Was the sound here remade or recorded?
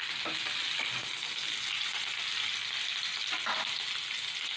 recorded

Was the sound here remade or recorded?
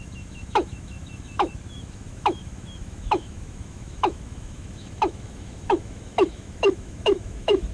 remade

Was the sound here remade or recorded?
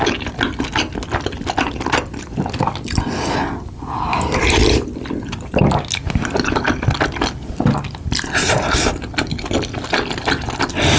recorded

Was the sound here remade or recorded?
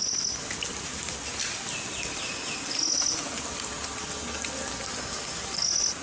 recorded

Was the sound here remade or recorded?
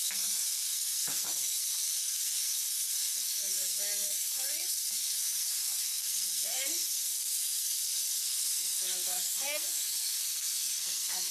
remade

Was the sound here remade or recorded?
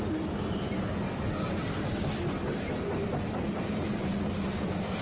recorded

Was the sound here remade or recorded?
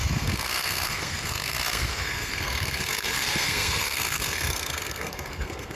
remade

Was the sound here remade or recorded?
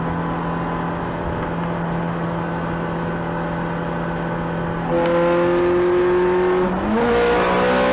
recorded